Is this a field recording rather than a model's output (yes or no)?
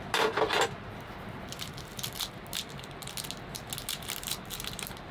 yes